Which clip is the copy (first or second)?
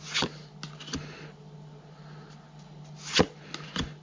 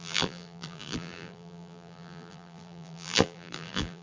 second